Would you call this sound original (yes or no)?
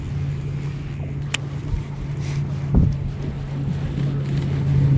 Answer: yes